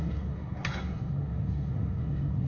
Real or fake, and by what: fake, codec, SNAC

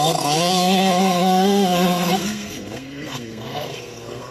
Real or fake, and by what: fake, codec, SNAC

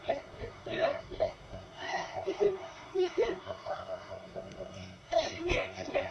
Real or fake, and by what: fake, codec, SNAC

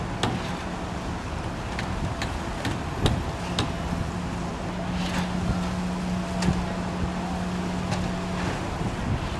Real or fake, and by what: real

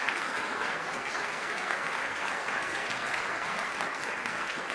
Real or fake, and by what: fake, codec, SNAC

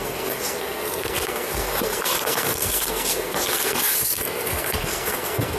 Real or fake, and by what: fake, codec, SNAC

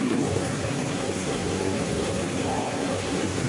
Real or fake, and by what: fake, codec, SNAC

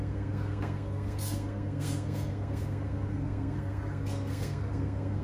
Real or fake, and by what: fake, codec, SNAC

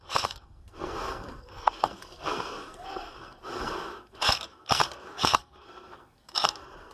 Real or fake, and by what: fake, codec, SNAC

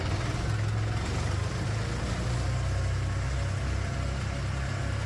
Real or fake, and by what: real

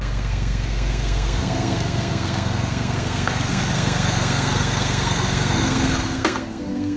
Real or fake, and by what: fake, codec, SNAC